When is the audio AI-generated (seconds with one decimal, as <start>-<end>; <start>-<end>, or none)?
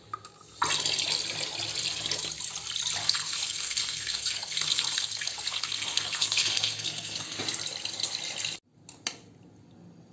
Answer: 3.0-7.4